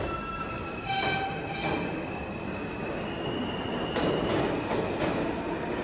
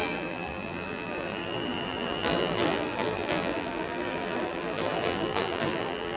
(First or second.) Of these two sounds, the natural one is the first